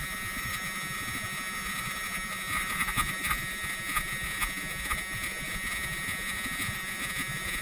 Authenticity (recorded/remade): remade